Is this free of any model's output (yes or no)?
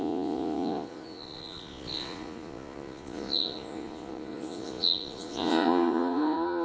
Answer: no